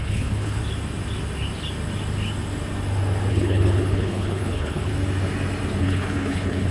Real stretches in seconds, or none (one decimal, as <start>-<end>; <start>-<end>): 0.6-3.3; 4.9-5.8

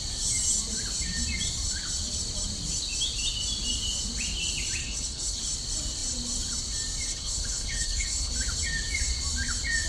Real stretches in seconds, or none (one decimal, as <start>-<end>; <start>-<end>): 0.0-4.8; 5.4-7.1; 8.3-9.9